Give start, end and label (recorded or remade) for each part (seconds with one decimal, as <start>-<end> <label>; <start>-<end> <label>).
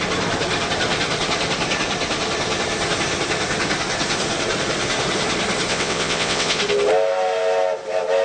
0.0-5.7 recorded; 5.7-6.6 remade; 6.6-8.2 recorded